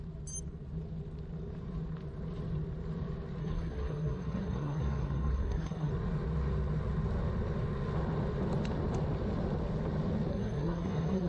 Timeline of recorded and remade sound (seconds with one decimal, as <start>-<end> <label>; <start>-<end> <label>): 0.0-3.4 recorded; 3.4-5.9 remade; 5.9-10.3 recorded; 10.3-11.3 remade